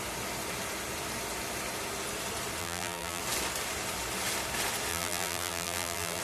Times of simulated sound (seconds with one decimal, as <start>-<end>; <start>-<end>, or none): 2.6-3.2; 4.9-6.2